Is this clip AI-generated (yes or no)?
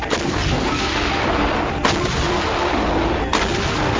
no